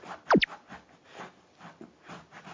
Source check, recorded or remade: recorded